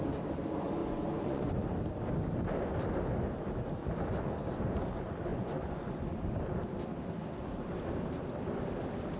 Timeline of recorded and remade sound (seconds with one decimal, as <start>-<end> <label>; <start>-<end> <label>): 0.0-0.8 recorded; 0.8-1.5 remade; 1.5-5.3 recorded; 5.3-5.9 remade; 5.9-9.2 recorded